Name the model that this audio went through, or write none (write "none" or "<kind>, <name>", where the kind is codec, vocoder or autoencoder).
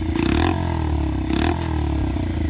none